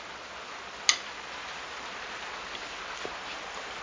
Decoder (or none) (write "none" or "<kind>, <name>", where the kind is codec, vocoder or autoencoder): none